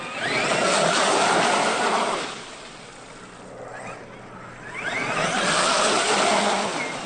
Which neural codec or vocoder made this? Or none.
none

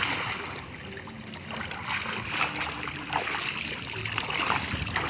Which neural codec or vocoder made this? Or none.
none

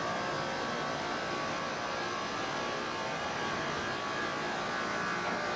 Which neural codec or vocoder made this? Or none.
none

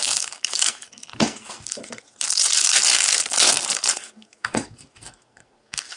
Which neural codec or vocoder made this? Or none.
codec, SNAC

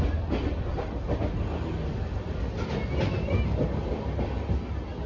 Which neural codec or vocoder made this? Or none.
none